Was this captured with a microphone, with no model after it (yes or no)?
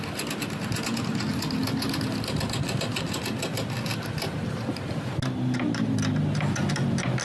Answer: yes